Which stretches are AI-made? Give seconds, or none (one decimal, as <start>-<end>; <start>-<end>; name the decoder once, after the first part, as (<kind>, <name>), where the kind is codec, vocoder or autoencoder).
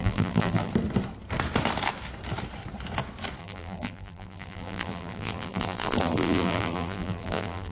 0.0-0.7 (vocoder, BigVGAN v2); 3.4-7.7